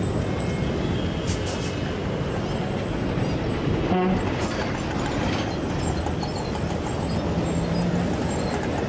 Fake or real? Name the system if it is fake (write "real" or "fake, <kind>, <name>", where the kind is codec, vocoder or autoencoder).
real